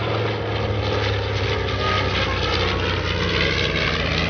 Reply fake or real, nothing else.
real